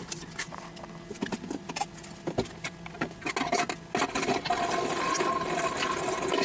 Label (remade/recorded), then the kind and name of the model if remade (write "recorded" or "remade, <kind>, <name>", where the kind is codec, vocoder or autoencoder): recorded